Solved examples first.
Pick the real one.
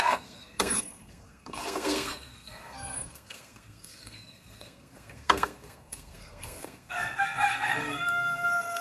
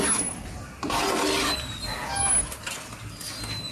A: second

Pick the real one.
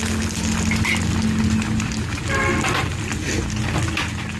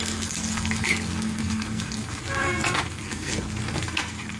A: first